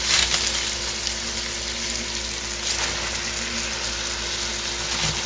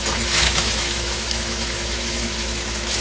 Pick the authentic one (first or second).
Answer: first